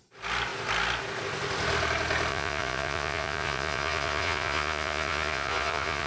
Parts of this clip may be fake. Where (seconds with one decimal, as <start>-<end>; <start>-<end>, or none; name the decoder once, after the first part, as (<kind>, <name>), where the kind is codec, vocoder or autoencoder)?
2.3-6.1 (vocoder, Vocos)